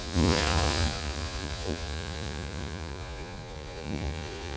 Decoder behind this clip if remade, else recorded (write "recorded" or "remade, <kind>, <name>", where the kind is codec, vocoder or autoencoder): remade, vocoder, Vocos